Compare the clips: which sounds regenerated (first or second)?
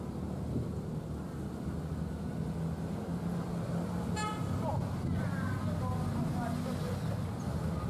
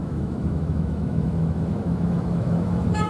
second